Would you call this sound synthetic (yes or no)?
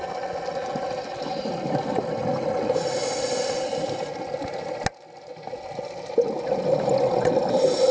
no